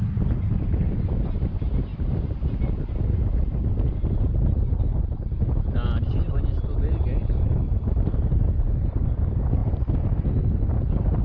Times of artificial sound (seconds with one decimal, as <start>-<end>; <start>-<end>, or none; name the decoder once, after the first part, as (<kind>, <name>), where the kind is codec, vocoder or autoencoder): none

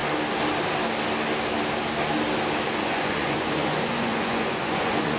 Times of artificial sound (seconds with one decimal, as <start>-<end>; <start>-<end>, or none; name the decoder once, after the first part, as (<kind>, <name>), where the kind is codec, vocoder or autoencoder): 2.8-5.2 (vocoder, Vocos)

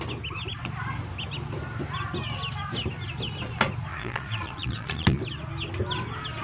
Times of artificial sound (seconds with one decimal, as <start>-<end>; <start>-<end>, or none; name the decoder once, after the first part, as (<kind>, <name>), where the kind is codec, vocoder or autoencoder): 3.9-5.2 (vocoder, Vocos)

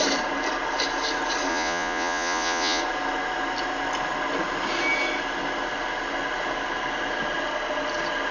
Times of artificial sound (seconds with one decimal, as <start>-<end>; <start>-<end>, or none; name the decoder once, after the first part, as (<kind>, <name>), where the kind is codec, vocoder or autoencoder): 1.5-2.8 (vocoder, Vocos)

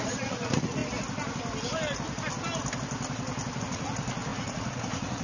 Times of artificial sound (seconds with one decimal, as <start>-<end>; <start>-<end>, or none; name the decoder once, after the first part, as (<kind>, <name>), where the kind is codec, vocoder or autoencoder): 0.0-0.8 (vocoder, Vocos); 3.6-5.2

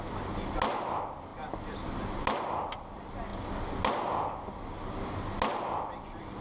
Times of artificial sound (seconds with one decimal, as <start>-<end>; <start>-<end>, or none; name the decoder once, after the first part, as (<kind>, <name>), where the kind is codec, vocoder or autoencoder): none